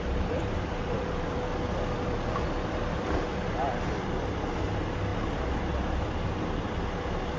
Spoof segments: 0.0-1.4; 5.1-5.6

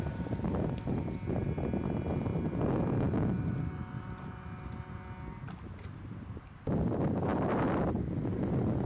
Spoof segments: none

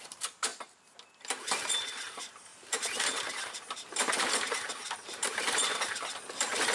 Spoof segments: 0.0-0.5; 1.2-6.7

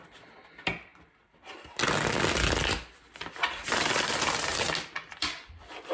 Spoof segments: 0.0-4.5

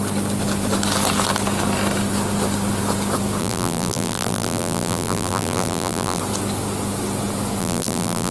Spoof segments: 3.4-6.2; 7.6-8.3